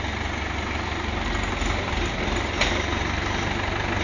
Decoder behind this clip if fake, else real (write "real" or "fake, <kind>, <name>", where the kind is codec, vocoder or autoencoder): real